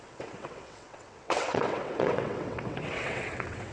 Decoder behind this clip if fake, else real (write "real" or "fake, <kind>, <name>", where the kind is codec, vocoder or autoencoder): fake, vocoder, WaveNeXt